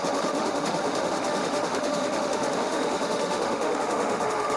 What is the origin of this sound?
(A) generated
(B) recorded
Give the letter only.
A